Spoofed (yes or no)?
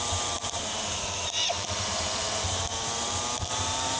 yes